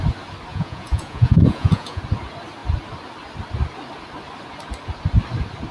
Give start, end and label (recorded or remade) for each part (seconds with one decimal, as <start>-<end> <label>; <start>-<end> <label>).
0.0-0.5 recorded; 0.5-2.0 remade; 2.0-5.7 recorded

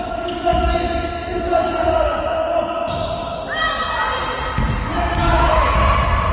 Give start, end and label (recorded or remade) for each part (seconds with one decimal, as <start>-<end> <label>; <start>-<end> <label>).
0.0-5.2 recorded; 5.2-5.8 remade; 5.8-6.3 recorded

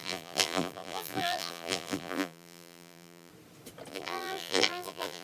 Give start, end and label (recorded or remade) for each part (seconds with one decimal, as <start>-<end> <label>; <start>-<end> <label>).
0.0-3.3 remade; 3.3-3.9 recorded; 3.9-5.2 remade

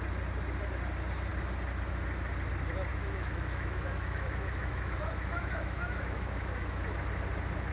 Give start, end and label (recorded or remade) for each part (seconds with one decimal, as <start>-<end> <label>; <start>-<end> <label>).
0.0-2.9 recorded; 2.9-7.1 remade; 7.1-7.7 recorded

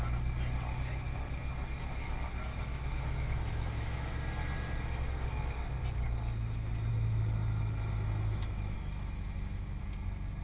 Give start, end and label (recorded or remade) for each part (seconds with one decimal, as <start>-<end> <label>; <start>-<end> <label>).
0.0-2.7 recorded; 2.7-4.2 remade; 4.2-6.9 recorded; 6.9-9.8 remade; 9.8-10.4 recorded

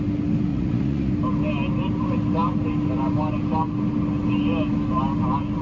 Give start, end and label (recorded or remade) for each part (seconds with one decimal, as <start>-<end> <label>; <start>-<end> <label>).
0.0-0.5 recorded; 0.5-1.1 remade; 1.1-5.6 recorded

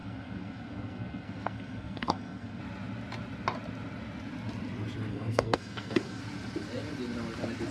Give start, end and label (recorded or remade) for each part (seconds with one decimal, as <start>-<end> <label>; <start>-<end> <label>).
0.0-2.6 remade; 2.6-5.1 recorded; 5.1-6.2 remade; 6.2-7.7 recorded

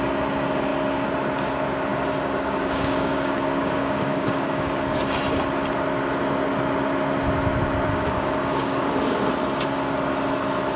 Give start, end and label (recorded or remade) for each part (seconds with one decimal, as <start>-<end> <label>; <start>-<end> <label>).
0.0-1.9 recorded; 1.9-5.0 remade; 5.0-7.9 recorded; 7.9-9.0 remade; 9.0-10.8 recorded